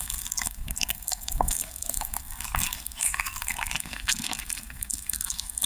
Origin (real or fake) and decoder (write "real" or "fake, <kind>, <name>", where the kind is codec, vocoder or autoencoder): fake, codec, SNAC